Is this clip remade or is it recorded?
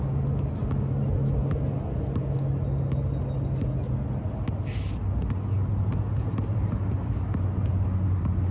recorded